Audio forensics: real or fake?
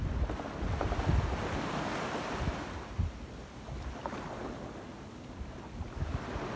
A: real